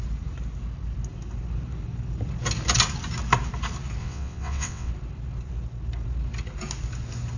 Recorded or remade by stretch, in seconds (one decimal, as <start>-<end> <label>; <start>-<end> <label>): 0.0-4.0 recorded; 4.0-4.9 remade; 4.9-7.4 recorded